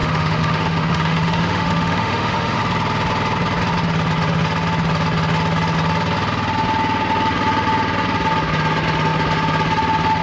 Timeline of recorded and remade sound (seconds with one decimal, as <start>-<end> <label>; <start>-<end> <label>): 0.0-2.6 remade; 2.6-10.2 recorded